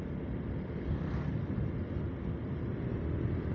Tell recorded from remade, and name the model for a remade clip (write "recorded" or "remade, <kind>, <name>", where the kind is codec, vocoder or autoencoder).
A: recorded